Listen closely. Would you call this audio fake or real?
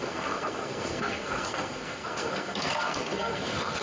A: fake